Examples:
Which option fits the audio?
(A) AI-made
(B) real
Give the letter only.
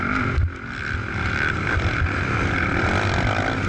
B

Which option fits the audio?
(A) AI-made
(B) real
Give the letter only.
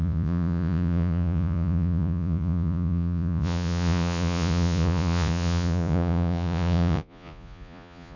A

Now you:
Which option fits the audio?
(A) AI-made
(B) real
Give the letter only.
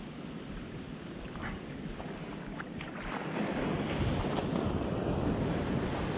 B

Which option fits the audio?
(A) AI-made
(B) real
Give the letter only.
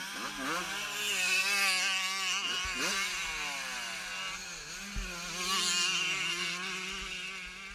B